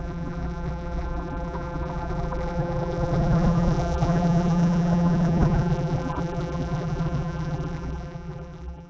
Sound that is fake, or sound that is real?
fake